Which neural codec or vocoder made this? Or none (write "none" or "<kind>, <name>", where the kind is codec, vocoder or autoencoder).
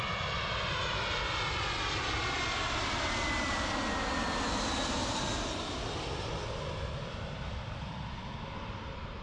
none